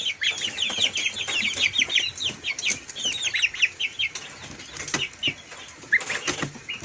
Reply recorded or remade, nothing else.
recorded